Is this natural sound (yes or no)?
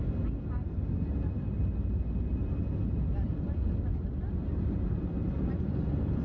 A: yes